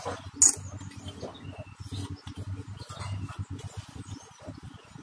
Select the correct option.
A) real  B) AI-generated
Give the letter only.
A